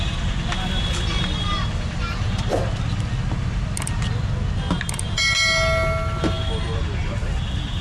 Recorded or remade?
recorded